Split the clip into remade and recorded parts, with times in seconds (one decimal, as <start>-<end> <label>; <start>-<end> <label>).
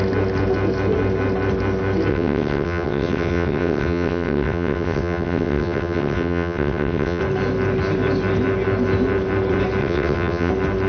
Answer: 0.0-2.1 recorded; 2.1-7.2 remade; 7.2-9.8 recorded; 9.8-10.5 remade; 10.5-10.9 recorded